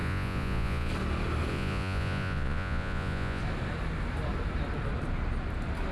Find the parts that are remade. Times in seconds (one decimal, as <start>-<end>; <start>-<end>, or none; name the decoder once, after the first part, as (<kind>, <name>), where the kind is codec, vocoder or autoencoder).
0.0-0.9 (vocoder, Vocos); 1.5-3.4